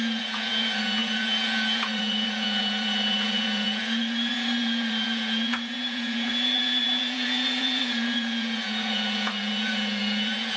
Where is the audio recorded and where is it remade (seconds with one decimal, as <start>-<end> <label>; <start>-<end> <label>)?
0.0-10.6 remade